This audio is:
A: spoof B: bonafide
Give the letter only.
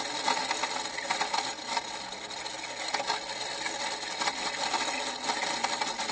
B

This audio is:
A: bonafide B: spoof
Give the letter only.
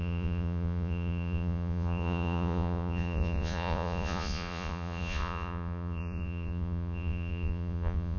B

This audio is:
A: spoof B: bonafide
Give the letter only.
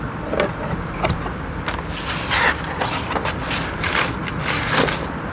B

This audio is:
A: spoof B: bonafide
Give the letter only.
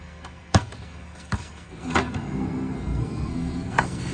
A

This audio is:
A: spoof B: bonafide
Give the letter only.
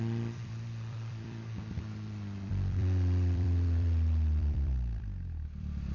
A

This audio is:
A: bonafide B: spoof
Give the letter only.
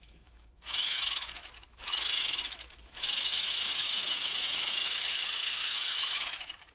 B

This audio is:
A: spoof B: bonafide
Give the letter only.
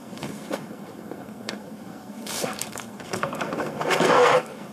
A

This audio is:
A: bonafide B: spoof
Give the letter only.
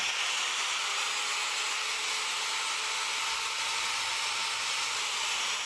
A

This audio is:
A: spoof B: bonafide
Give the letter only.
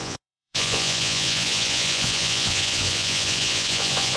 A